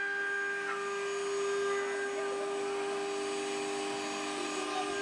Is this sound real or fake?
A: real